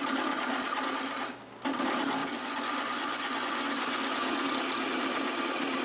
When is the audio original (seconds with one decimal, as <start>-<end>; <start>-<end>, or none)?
0.0-2.2; 4.5-5.8